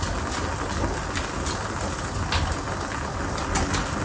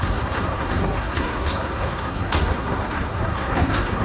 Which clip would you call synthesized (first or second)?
second